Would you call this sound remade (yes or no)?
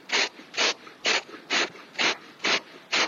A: no